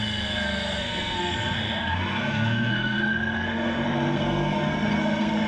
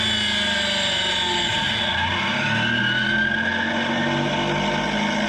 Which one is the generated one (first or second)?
first